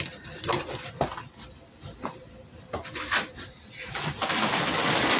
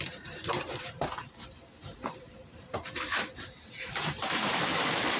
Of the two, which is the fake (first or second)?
second